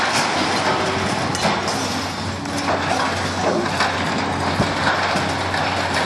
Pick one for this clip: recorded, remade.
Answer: recorded